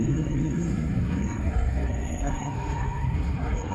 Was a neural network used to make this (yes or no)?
yes